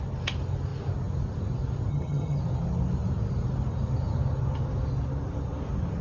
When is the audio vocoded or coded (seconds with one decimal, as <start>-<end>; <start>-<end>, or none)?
1.9-2.4